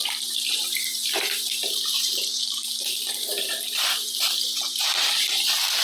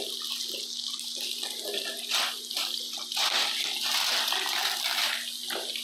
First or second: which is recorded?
second